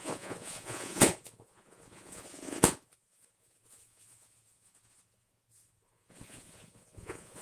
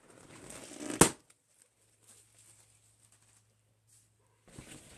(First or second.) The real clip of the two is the second